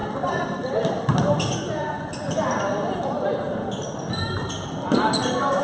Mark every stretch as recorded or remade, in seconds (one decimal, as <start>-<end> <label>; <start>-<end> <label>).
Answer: 0.0-1.6 recorded; 1.6-2.1 remade; 2.1-5.6 recorded